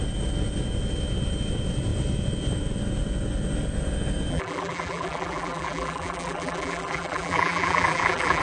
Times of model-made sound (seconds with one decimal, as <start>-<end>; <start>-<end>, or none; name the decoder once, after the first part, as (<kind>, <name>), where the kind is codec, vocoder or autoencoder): 4.3-8.4 (vocoder, BigVGAN v2)